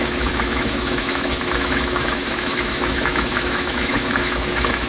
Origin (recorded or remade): remade